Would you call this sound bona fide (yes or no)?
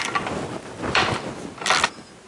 yes